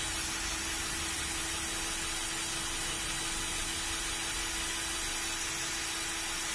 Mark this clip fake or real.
real